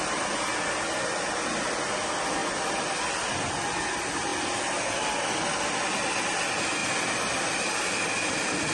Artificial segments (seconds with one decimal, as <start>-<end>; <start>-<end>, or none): none